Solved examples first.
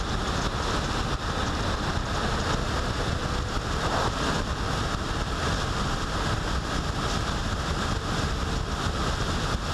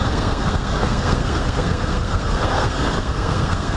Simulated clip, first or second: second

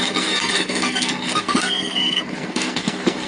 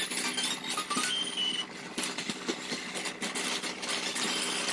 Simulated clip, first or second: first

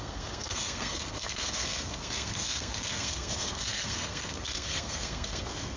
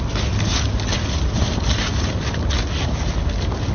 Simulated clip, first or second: first